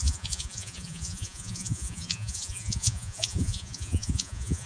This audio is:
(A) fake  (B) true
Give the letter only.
A